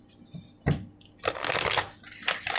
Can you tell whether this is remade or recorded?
recorded